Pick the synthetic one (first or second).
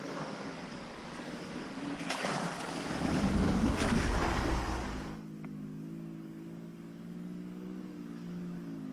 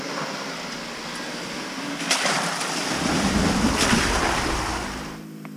first